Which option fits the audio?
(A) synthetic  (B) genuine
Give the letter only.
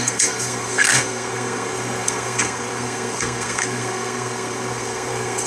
A